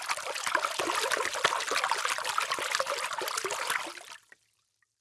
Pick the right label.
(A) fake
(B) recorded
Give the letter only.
B